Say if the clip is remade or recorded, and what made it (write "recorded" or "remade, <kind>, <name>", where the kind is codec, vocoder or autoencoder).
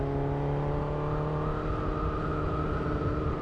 recorded